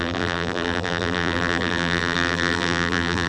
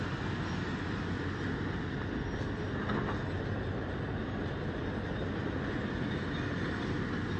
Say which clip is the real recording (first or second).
second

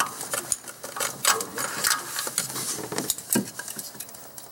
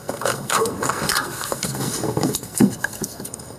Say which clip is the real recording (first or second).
first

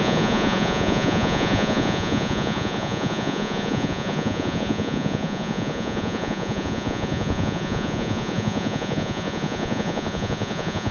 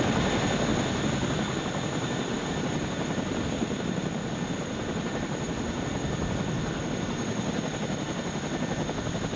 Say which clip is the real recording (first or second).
second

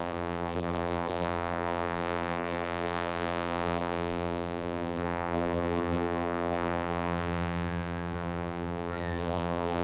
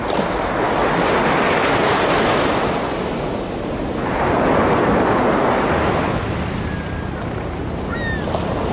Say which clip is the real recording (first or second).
second